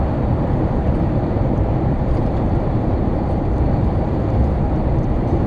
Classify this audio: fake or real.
fake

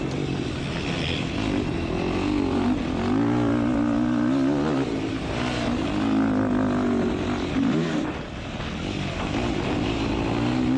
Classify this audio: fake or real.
real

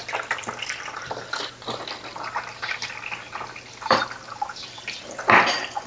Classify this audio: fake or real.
real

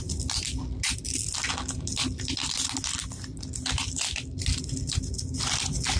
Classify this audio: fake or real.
real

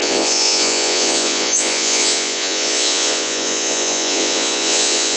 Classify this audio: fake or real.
fake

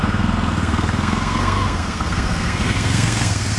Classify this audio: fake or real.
fake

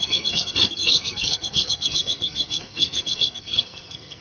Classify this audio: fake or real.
fake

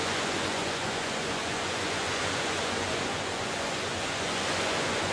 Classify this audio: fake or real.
fake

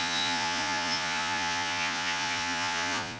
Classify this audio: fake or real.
fake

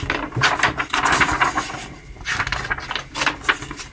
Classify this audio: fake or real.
real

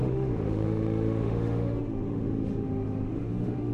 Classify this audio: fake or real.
fake